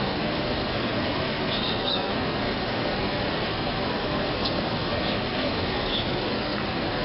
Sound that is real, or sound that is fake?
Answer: fake